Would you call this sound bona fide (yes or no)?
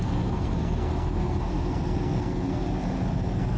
no